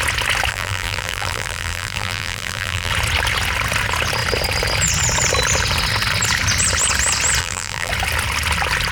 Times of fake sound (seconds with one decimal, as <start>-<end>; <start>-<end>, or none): 0.5-2.9; 7.4-7.9